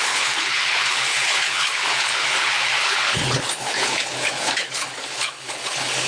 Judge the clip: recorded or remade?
remade